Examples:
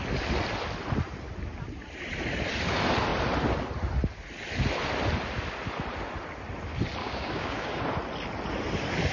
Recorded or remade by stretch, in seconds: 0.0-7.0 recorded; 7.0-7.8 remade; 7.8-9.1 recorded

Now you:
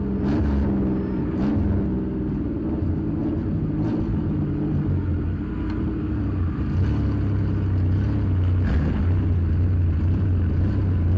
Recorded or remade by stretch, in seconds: 0.0-11.2 recorded

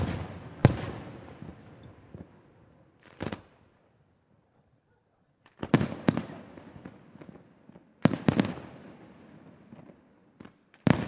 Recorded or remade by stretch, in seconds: 0.0-11.1 remade

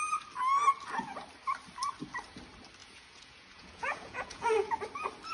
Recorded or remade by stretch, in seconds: 0.0-2.8 recorded; 2.8-4.7 remade; 4.7-5.3 recorded

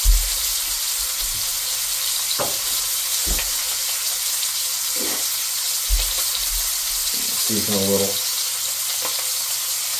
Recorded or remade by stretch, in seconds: 0.0-7.0 recorded; 7.0-7.5 remade; 7.5-10.0 recorded

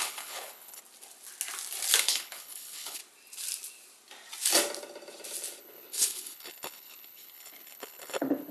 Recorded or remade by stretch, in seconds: 0.0-0.8 remade; 0.8-2.0 recorded; 2.0-3.0 remade; 3.0-5.6 recorded; 5.6-8.5 remade

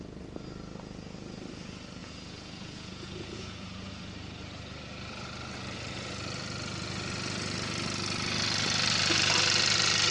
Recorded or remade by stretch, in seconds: 0.0-2.0 recorded; 2.0-3.9 remade; 3.9-10.1 recorded